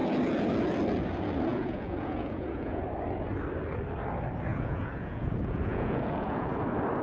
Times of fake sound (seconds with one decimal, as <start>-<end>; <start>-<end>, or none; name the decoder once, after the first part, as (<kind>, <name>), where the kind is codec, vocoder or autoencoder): 1.5-2.8 (vocoder, Vocos); 4.5-6.5